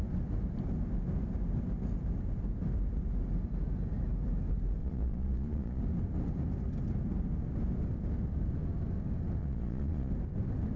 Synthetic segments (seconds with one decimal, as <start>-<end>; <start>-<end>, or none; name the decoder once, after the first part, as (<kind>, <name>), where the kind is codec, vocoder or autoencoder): 4.8-5.8 (vocoder, Vocos); 9.4-10.1